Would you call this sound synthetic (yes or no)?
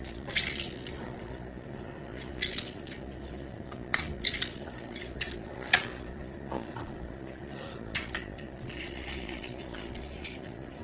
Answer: yes